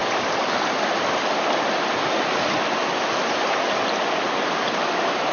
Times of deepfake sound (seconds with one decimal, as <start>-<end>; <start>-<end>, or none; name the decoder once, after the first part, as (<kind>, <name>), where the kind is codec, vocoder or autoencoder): none